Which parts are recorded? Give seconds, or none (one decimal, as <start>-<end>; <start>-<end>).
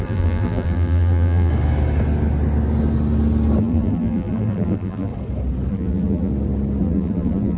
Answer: 1.5-3.6; 5.1-5.7; 6.3-6.8